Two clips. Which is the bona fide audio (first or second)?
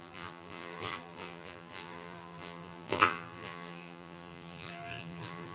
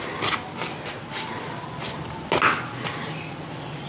second